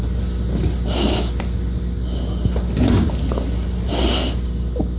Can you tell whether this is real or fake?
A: real